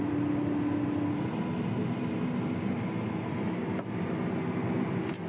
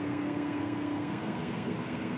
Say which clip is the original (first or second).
first